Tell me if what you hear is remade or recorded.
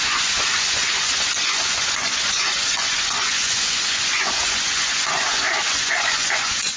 remade